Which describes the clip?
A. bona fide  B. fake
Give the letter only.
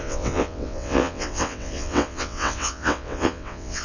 B